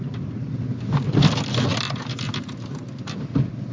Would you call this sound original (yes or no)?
yes